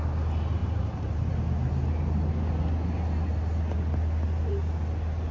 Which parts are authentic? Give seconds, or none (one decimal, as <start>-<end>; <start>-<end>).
0.0-0.6; 1.3-5.3